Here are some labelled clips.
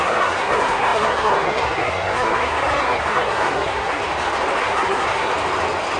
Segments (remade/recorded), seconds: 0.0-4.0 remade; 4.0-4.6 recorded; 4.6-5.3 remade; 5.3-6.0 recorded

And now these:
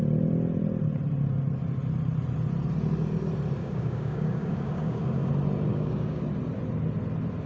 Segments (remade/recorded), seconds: 0.0-3.6 recorded; 3.6-5.3 remade; 5.3-5.7 recorded; 5.7-6.2 remade; 6.2-7.5 recorded

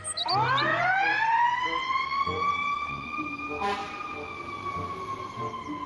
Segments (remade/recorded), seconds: 0.0-0.7 recorded; 0.7-3.3 remade; 3.3-5.9 recorded

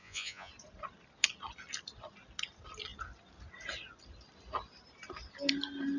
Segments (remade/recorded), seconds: 0.0-0.5 remade; 0.5-6.0 recorded

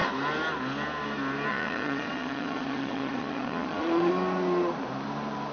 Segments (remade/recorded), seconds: 0.0-1.5 recorded; 1.5-4.1 remade; 4.1-5.5 recorded

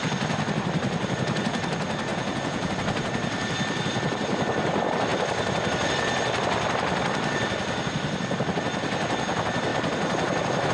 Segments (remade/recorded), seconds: 0.0-2.1 recorded; 2.1-2.7 remade; 2.7-10.7 recorded